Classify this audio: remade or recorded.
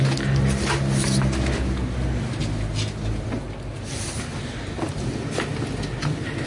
recorded